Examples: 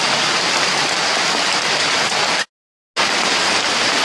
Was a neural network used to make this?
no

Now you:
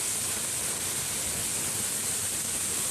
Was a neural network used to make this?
no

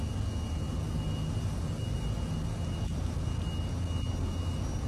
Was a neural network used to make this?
no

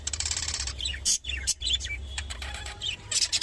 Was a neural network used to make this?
yes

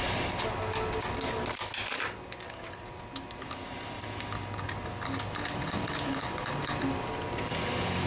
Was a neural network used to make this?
no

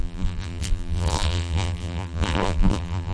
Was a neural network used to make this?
yes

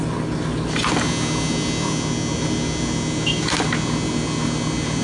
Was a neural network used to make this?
no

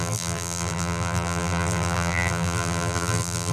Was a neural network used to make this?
yes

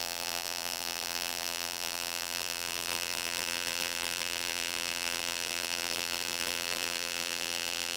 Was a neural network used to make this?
yes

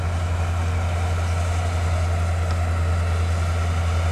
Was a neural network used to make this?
no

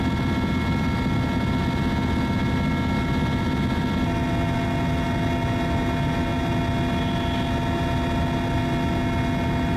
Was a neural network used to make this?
no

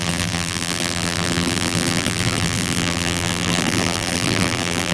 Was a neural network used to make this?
yes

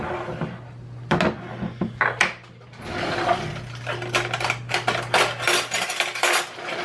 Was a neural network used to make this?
no